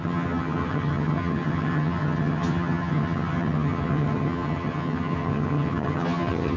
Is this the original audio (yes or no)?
no